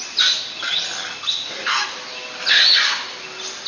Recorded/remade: recorded